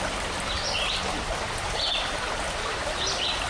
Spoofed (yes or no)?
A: no